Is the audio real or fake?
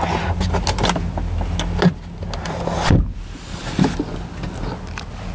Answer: real